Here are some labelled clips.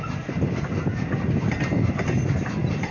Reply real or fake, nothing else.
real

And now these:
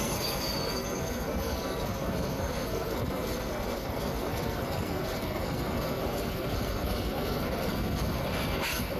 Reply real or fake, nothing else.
fake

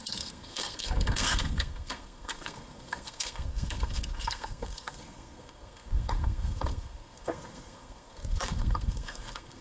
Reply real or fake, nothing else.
fake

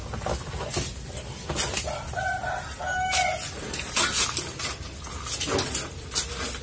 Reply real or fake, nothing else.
real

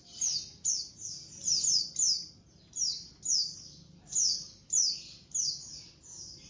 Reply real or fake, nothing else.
real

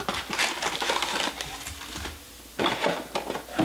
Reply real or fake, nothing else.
real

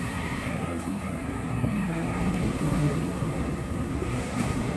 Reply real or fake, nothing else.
fake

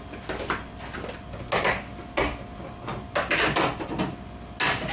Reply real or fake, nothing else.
real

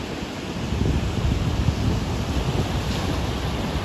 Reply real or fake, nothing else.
real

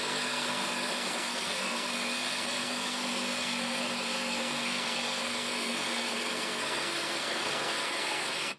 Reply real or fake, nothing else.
fake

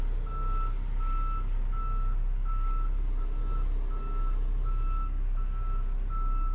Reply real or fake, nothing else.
real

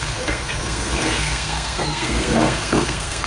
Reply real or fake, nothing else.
fake